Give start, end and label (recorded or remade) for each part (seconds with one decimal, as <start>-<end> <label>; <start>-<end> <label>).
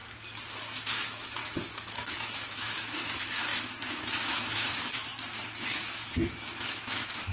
0.0-0.6 recorded; 0.6-1.4 remade; 1.4-1.9 recorded; 1.9-7.3 remade